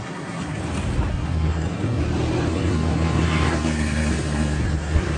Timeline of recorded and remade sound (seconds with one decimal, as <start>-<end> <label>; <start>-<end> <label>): 0.0-0.6 remade; 0.6-1.1 recorded; 1.1-2.0 remade; 2.0-2.5 recorded; 2.5-5.2 remade